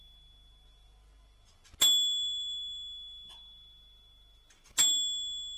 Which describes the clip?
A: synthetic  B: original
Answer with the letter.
B